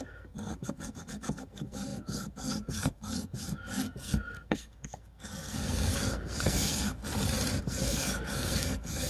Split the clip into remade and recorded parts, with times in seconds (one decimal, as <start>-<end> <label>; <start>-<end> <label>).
0.0-7.0 remade; 7.0-7.6 recorded; 7.6-9.1 remade

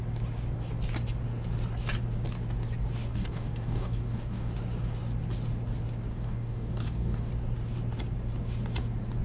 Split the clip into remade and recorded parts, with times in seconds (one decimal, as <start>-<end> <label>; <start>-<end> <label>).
0.0-3.1 recorded; 3.1-4.5 remade; 4.5-6.1 recorded; 6.1-7.3 remade; 7.3-9.2 recorded